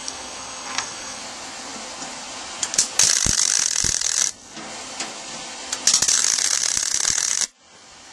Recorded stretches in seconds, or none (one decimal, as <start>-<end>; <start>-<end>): 1.2-8.1